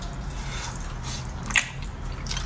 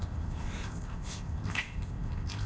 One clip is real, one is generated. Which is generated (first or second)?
second